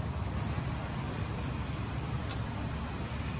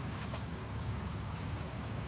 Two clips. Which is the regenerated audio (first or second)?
second